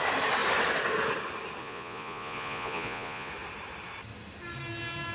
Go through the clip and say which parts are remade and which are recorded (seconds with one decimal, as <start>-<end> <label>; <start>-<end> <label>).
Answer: 0.0-1.6 recorded; 1.6-3.3 remade; 3.3-5.1 recorded